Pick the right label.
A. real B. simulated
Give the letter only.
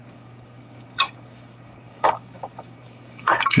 B